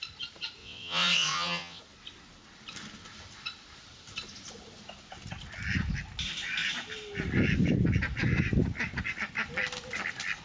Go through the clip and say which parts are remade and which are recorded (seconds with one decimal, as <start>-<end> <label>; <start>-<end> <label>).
0.0-0.6 recorded; 0.6-1.8 remade; 1.8-10.4 recorded